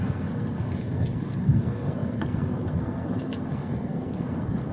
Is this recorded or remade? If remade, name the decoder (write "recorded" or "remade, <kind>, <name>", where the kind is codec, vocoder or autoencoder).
remade, codec, SNAC